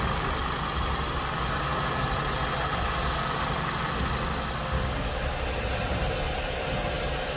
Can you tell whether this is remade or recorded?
recorded